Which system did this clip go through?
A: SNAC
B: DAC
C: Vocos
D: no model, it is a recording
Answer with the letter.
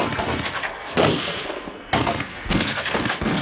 A